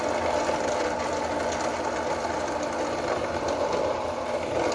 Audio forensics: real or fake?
real